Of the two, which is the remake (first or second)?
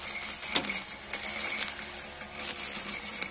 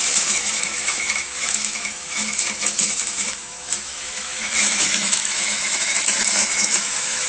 second